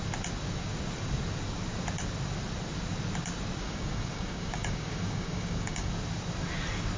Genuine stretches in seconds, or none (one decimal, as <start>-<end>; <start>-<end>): 0.0-3.6; 5.9-7.0